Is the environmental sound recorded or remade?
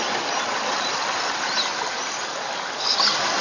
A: recorded